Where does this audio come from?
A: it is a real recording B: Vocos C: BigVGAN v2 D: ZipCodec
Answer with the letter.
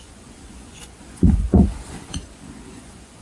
B